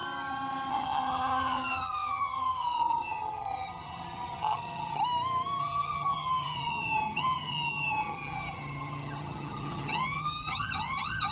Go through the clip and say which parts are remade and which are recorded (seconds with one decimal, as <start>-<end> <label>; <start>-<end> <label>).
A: 0.0-0.7 recorded; 0.7-5.0 remade; 5.0-5.6 recorded; 5.6-11.3 remade